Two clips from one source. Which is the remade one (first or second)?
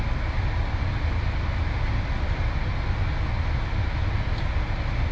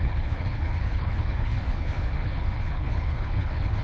second